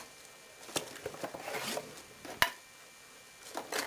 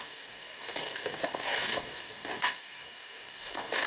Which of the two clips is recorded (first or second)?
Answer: first